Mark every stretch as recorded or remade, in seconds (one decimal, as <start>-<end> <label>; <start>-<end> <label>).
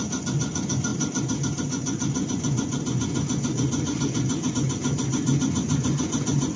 0.0-6.6 remade